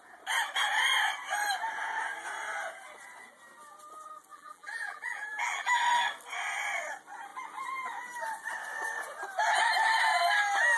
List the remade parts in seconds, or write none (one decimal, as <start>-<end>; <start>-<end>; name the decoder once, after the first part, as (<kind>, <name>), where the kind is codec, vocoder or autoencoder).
4.3-5.8 (vocoder, BigVGAN v2)